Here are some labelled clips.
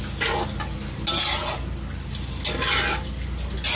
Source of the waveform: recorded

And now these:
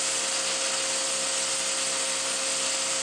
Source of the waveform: recorded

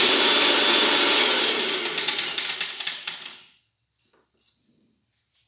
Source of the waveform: recorded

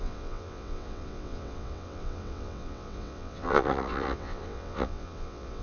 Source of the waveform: remade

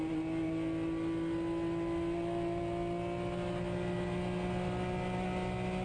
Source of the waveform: recorded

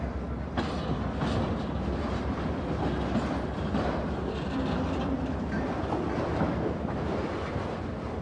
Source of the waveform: recorded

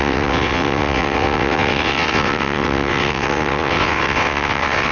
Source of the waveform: remade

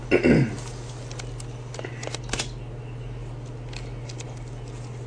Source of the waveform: recorded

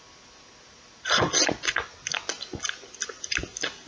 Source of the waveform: recorded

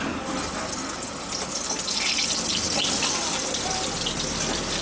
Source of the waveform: recorded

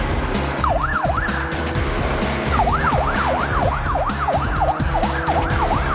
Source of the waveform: recorded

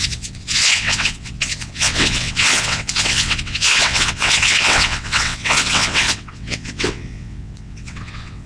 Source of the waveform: remade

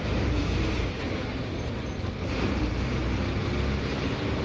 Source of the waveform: recorded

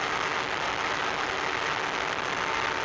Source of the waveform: recorded